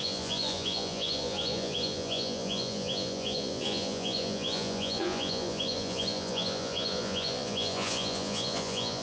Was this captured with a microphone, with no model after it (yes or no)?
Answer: no